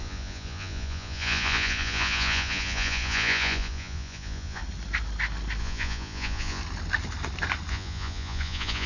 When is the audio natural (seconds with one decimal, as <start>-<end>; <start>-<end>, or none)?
4.6-5.6; 6.6-7.7